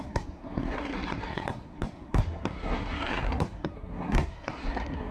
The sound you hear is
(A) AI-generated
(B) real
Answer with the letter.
A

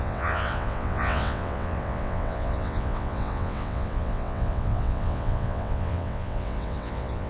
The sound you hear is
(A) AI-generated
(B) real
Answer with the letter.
A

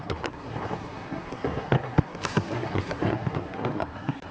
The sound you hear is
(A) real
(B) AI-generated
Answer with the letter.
B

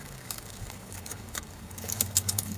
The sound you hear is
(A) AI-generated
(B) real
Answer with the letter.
A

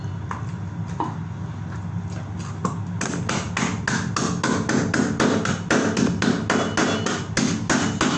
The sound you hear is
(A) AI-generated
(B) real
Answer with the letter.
B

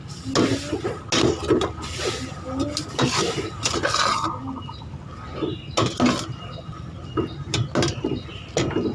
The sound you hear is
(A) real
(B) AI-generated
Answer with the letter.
A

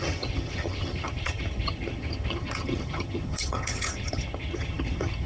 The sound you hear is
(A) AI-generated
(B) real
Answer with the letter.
A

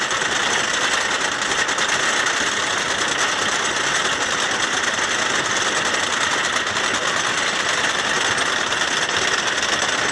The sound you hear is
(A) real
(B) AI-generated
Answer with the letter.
A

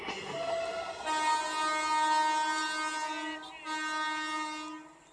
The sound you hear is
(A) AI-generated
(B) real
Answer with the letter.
B